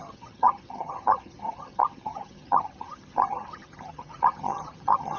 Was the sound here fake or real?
fake